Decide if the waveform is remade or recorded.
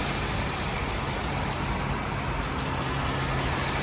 recorded